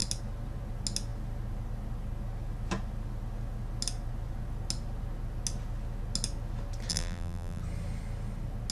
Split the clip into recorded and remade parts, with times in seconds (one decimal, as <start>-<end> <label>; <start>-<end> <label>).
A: 0.0-6.9 recorded; 6.9-7.6 remade; 7.6-8.7 recorded

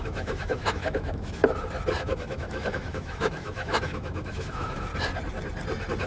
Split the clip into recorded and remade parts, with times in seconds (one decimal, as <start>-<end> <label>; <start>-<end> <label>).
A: 0.0-1.4 remade; 1.4-2.0 recorded; 2.0-4.9 remade; 4.9-6.1 recorded

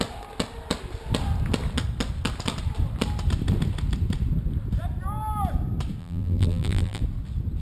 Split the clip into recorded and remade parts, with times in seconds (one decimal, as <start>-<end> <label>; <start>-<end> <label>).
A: 0.0-6.0 recorded; 6.0-7.0 remade; 7.0-7.6 recorded

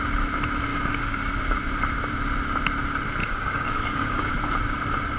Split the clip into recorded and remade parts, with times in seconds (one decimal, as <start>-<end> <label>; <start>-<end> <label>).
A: 0.0-0.7 recorded; 0.7-1.3 remade; 1.3-3.2 recorded; 3.2-4.3 remade; 4.3-5.2 recorded

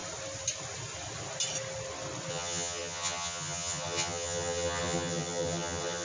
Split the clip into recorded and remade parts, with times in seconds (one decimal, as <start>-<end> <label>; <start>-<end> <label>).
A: 0.0-2.3 recorded; 2.3-6.0 remade